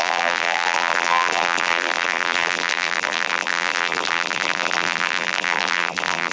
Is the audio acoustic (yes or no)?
no